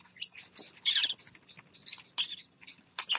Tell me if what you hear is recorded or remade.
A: recorded